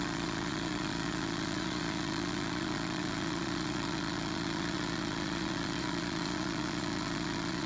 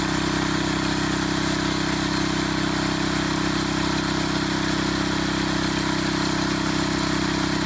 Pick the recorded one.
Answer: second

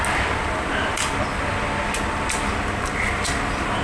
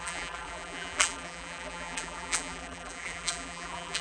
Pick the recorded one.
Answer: first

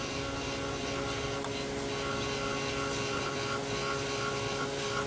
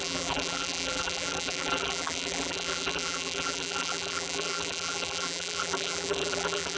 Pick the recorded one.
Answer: first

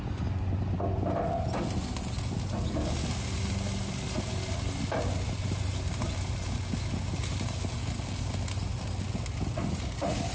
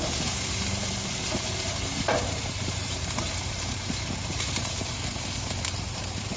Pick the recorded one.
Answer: first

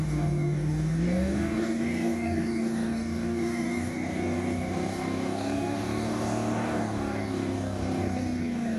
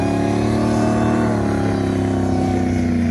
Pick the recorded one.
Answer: second